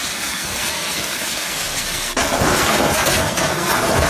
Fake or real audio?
fake